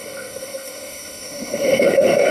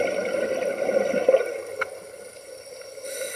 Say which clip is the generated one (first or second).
first